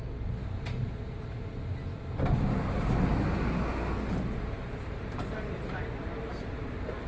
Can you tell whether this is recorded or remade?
recorded